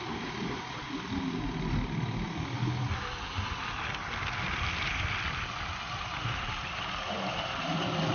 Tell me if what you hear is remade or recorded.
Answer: recorded